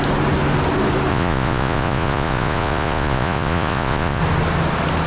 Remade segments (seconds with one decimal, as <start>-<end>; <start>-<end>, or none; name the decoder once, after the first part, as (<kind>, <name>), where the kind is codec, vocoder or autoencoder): 1.1-4.2 (vocoder, Vocos)